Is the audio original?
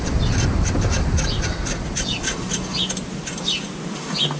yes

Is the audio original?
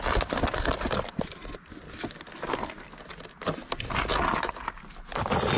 yes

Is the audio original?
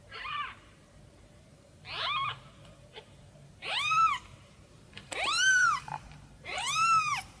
no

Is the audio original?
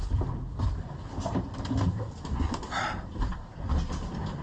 yes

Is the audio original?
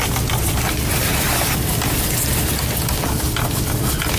yes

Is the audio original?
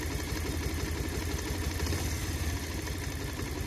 yes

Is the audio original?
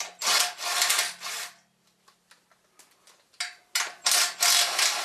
yes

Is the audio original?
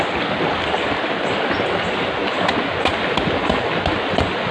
yes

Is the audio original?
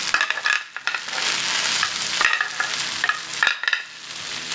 yes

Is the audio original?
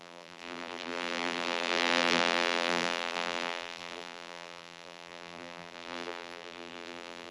no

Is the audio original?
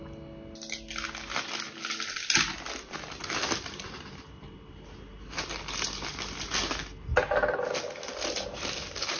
yes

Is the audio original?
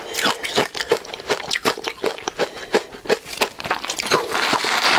yes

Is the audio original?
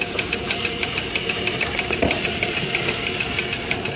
no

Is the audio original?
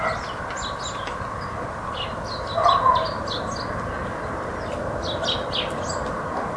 yes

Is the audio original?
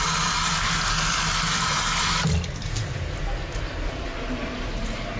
yes